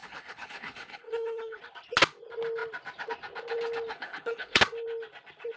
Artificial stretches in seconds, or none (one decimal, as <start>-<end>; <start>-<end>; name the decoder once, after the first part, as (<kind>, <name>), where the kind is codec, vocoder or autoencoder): 0.0-1.6 (codec, HILCodec); 3.9-4.6